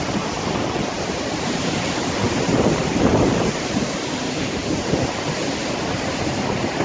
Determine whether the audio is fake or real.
real